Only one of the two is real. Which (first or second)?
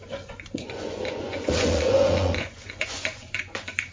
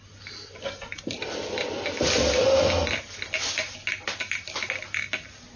second